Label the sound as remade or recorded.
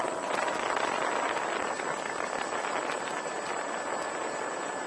recorded